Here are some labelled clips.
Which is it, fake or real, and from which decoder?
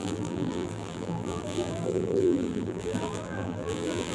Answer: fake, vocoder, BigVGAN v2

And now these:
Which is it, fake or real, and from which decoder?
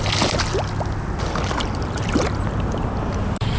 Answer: real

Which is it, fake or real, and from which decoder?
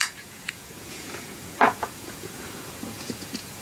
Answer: fake, vocoder, Vocos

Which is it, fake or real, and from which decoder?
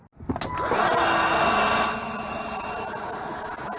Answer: real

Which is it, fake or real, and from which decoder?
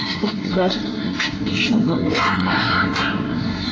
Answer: fake, codec, SNAC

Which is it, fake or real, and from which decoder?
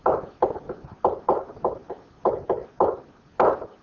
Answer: real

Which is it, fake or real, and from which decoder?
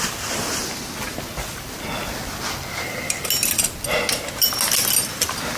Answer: real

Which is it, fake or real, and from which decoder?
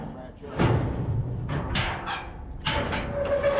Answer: real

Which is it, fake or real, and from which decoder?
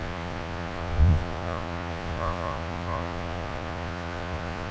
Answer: fake, vocoder, Vocos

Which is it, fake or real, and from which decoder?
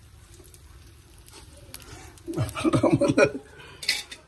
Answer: real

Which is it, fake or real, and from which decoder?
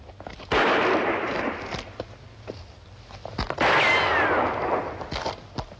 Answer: real